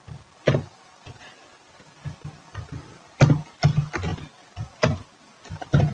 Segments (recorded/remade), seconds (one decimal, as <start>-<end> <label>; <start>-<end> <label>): 0.0-5.9 recorded